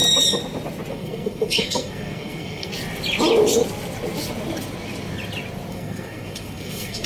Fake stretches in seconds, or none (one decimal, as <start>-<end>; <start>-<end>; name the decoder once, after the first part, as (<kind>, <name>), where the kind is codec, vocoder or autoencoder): 0.9-2.7 (codec, SNAC); 5.7-7.1